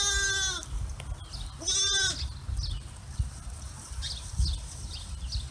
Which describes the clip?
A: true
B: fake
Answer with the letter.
A